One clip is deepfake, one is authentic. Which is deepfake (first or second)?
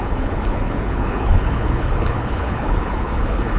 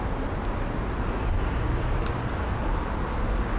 first